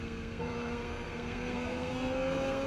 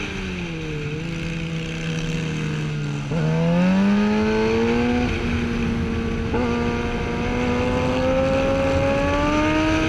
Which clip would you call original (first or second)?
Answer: second